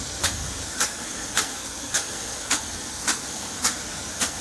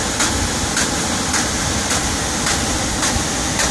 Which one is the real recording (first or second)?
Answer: second